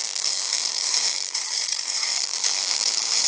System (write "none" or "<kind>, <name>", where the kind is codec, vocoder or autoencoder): codec, DAC